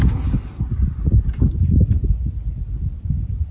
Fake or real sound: real